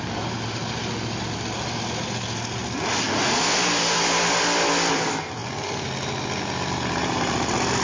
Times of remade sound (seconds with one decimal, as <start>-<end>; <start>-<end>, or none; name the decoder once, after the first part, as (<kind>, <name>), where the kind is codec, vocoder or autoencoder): none

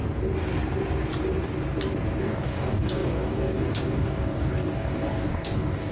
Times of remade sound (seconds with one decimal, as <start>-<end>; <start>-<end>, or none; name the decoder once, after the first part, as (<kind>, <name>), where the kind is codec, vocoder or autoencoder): 2.2-5.9 (codec, DAC)

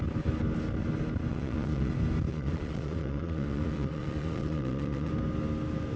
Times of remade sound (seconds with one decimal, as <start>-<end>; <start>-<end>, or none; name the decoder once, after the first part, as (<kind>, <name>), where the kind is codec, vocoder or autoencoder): 1.3-1.9 (vocoder, Vocos); 2.3-5.1

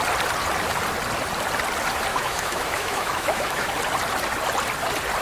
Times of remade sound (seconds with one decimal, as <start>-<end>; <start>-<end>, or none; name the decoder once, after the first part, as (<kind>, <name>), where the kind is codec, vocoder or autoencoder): 2.1-3.7 (autoencoder, DAC-VAE)

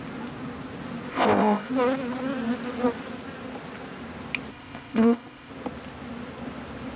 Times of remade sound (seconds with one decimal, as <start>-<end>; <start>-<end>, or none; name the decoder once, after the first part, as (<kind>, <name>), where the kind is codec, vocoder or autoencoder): 1.1-1.7 (codec, ZipCodec); 4.5-5.5

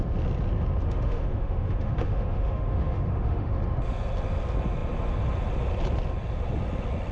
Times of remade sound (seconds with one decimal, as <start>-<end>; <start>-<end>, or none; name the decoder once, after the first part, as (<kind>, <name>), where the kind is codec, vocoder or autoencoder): 0.8-3.6 (autoencoder, DAC-VAE)

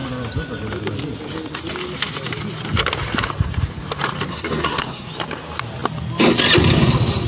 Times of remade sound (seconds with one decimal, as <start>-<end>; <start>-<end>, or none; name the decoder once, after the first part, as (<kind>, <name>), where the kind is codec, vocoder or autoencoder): 4.3-5.1 (codec, SNAC)

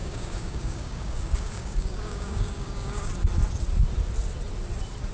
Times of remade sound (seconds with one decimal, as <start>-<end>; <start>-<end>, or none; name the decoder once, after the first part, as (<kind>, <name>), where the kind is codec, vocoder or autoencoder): 0.0-3.1 (codec, DAC)